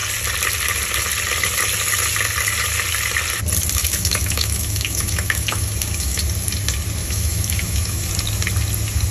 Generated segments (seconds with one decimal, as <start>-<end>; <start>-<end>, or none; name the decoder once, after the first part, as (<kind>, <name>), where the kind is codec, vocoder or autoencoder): 3.8-6.2 (autoencoder, DAC-VAE); 7.0-8.1